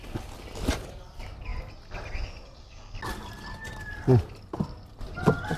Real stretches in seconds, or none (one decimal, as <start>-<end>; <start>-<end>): 0.0-5.6